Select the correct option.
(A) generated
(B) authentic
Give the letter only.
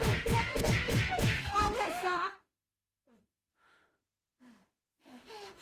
A